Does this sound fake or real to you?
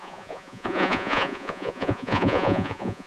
fake